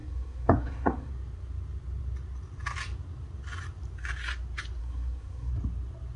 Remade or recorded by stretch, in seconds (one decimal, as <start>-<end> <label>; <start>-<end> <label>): 0.0-1.1 remade; 1.1-4.8 recorded; 4.8-5.5 remade; 5.5-6.2 recorded